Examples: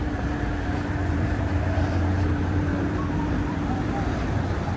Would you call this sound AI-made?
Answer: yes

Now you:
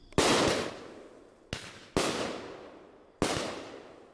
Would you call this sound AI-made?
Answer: no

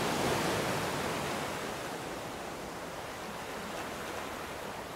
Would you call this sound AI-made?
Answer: no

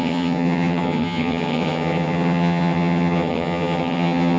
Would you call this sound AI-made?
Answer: yes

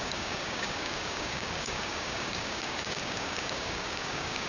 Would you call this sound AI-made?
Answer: yes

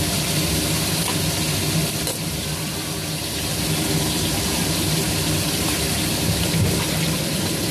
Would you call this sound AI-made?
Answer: yes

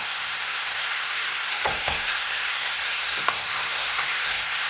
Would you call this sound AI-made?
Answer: yes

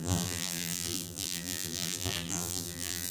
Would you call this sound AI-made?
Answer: yes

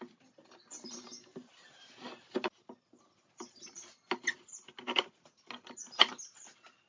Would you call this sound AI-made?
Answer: no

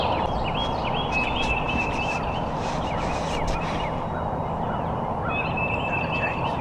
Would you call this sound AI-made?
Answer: no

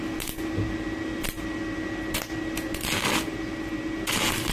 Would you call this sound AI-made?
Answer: no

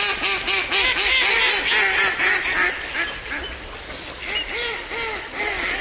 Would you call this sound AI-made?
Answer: no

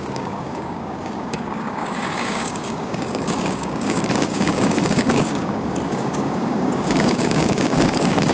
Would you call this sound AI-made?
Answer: yes